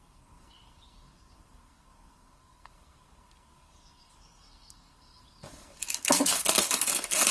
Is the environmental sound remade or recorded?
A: remade